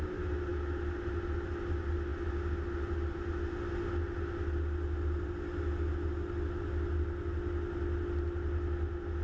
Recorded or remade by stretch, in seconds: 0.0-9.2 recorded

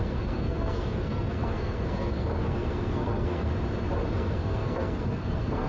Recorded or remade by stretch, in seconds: 0.0-3.5 remade; 3.5-4.1 recorded; 4.1-5.7 remade